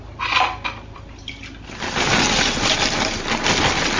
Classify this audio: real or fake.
real